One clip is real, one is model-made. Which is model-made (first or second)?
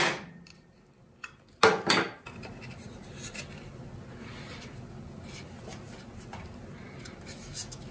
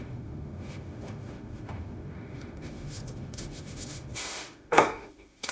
second